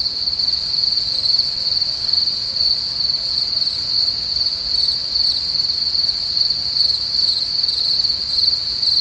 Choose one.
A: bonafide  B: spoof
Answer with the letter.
A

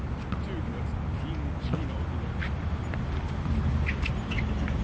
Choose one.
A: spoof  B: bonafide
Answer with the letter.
B